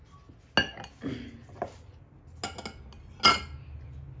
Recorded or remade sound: recorded